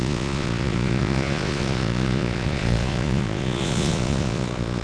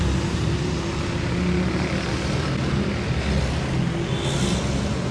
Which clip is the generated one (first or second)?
first